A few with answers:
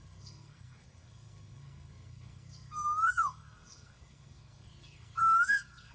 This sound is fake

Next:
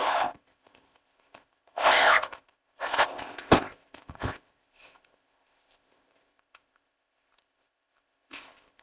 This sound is fake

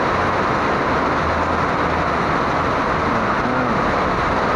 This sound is real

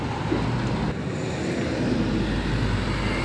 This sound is real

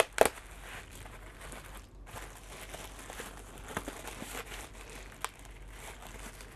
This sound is real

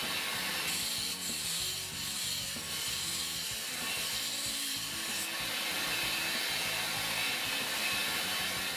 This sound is fake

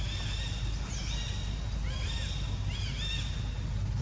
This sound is real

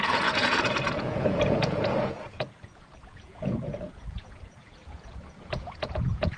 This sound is fake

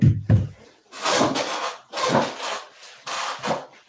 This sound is real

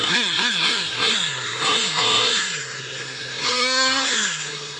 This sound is fake